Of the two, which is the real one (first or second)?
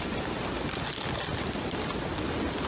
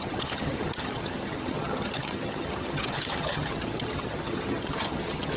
first